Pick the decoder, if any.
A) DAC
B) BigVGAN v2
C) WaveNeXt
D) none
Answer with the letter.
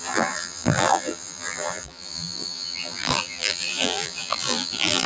B